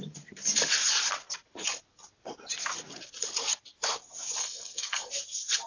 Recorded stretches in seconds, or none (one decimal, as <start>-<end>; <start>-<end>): 0.0-4.4; 5.1-5.7